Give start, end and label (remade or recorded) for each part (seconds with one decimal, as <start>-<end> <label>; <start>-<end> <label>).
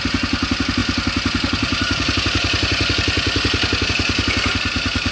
0.0-5.1 recorded